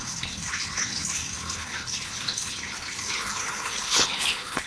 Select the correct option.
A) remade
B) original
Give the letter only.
A